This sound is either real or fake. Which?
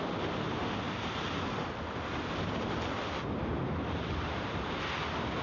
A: real